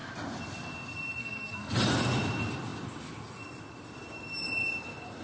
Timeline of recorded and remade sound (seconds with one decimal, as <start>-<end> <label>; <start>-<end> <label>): 0.0-1.2 recorded; 1.2-1.7 remade; 1.7-5.2 recorded